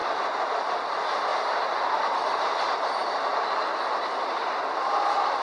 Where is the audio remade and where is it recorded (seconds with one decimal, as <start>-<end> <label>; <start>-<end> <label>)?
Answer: 0.0-5.4 recorded